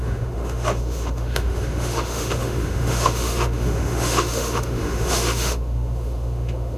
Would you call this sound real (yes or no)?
no